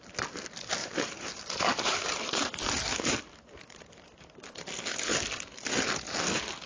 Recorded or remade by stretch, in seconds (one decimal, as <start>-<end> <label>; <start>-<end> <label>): 0.0-0.8 recorded; 0.8-4.6 remade; 4.6-6.7 recorded

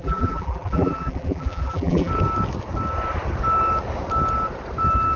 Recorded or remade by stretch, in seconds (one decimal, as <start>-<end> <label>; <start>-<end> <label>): 0.0-2.1 remade; 2.1-5.2 recorded

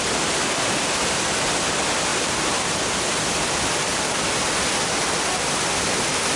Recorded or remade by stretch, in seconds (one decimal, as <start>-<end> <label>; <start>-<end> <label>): 0.0-2.1 recorded; 2.1-2.7 remade; 2.7-3.9 recorded; 3.9-5.9 remade; 5.9-6.4 recorded